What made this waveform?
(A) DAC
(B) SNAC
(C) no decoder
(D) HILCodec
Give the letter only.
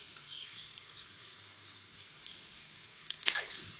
B